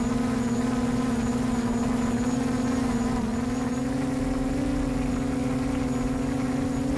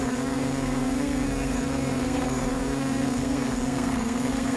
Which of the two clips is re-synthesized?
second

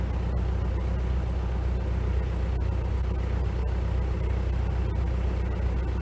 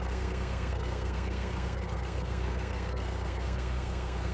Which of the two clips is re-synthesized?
second